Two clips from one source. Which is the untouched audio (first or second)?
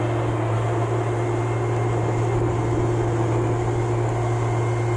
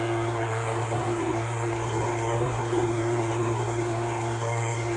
first